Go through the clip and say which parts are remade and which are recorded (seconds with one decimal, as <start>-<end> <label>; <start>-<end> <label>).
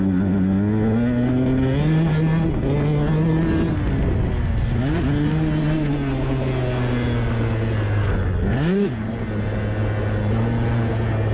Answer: 0.0-11.3 recorded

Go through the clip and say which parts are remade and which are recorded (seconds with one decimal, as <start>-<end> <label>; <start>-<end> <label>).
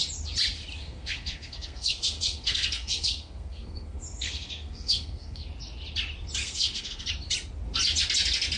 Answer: 0.0-0.8 recorded; 0.8-5.5 remade; 5.5-6.4 recorded; 6.4-7.1 remade; 7.1-8.6 recorded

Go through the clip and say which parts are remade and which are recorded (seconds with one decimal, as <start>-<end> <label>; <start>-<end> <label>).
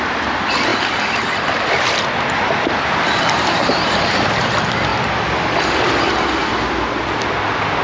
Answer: 0.0-0.7 recorded; 0.7-4.3 remade; 4.3-4.9 recorded; 4.9-6.2 remade; 6.2-7.8 recorded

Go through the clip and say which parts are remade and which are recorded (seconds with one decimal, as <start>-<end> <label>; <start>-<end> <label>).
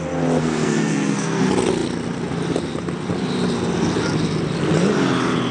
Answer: 0.0-0.4 recorded; 0.4-1.4 remade; 1.4-5.5 recorded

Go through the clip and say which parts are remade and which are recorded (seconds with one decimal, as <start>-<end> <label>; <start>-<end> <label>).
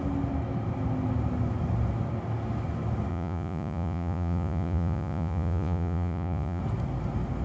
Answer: 0.0-3.1 recorded; 3.1-6.6 remade; 6.6-7.4 recorded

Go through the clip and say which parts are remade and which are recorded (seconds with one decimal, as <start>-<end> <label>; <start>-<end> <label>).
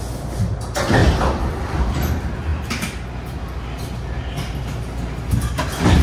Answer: 0.0-6.0 recorded